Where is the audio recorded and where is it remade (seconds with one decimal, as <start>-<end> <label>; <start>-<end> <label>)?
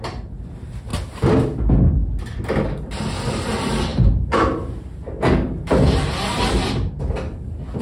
0.0-7.8 recorded